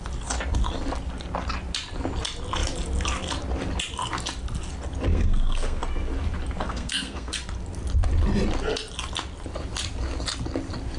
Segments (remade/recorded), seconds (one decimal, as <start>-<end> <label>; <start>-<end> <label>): 0.0-5.1 recorded; 5.1-5.8 remade; 5.8-6.6 recorded; 6.6-7.4 remade; 7.4-11.0 recorded

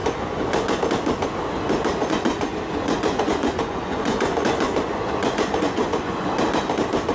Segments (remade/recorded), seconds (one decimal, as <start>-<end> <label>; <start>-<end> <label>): 0.0-0.8 remade; 0.8-2.0 recorded; 2.0-6.3 remade; 6.3-7.1 recorded